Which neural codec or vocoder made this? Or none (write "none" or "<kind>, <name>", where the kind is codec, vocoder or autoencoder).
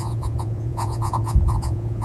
vocoder, Vocos